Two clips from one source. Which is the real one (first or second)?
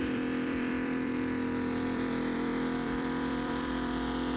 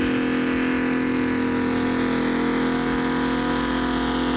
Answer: second